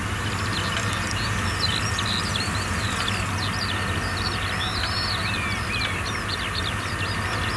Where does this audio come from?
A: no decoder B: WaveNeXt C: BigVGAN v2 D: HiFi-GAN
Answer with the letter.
A